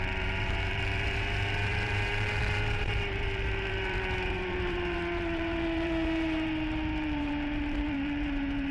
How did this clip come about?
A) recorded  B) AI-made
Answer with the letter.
B